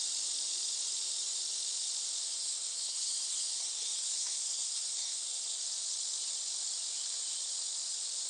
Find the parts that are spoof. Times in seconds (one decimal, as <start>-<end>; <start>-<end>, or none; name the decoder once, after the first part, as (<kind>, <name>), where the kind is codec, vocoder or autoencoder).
2.2-5.6 (codec, SNAC)